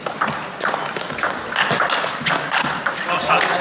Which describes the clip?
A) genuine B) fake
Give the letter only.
A